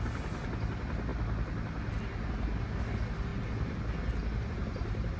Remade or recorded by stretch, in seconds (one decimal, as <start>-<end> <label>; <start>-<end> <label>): 0.0-5.2 recorded